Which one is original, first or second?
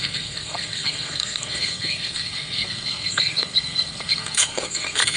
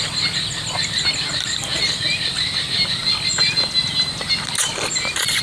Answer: second